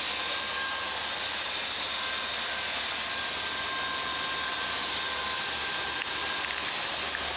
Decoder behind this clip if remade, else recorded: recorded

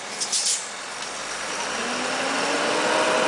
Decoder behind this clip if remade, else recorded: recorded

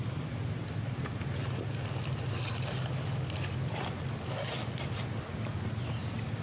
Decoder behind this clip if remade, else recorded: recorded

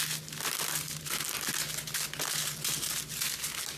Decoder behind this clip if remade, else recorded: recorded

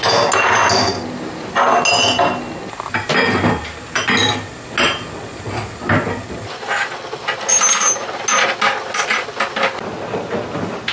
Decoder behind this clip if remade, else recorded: recorded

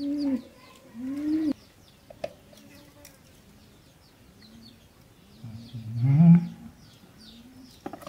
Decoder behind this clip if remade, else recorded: recorded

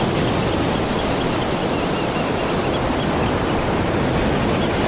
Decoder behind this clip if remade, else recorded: recorded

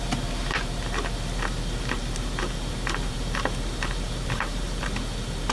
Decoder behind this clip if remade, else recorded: remade, vocoder, BigVGAN v2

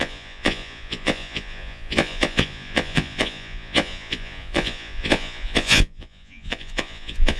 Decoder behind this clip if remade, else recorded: remade, vocoder, Vocos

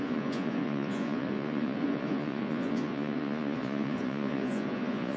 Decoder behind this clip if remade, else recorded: remade, vocoder, Vocos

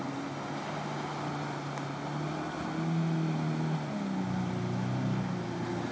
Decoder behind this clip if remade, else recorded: recorded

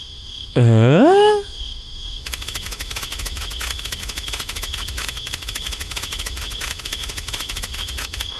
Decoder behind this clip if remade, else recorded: remade, autoencoder, DAC-VAE